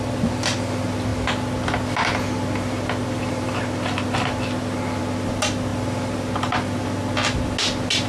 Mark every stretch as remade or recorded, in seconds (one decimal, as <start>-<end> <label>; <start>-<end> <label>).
0.0-8.1 recorded